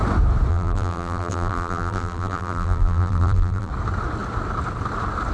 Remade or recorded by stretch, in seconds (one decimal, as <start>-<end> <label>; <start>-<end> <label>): 0.0-0.5 recorded; 0.5-3.7 remade; 3.7-5.3 recorded